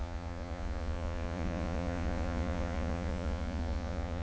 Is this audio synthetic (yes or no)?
yes